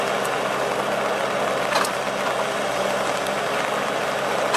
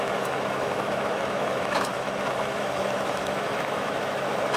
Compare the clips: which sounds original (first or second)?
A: first